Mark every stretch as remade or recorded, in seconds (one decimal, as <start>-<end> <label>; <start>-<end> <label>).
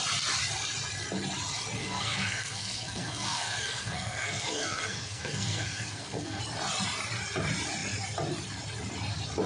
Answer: 0.0-1.8 recorded; 1.8-6.4 remade; 6.4-9.5 recorded